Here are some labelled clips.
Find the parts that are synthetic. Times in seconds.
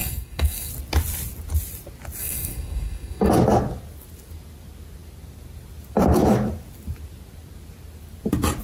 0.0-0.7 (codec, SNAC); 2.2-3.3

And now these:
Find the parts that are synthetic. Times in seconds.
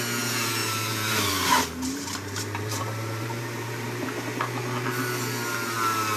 0.6-4.3 (vocoder, BigVGAN v2)